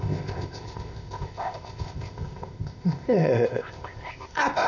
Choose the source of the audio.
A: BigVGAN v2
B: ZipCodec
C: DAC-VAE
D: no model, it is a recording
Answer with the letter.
B